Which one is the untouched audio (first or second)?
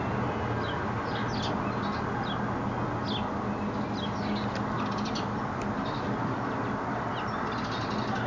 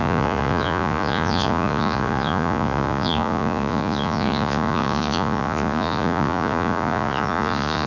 first